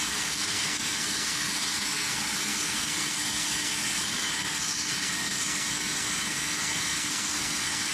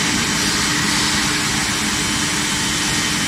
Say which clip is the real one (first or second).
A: second